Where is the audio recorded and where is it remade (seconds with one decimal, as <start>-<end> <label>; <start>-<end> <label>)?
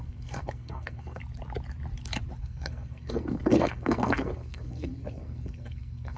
0.0-1.2 remade; 1.2-2.4 recorded; 2.4-6.2 remade